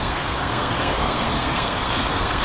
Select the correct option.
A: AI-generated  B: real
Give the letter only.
A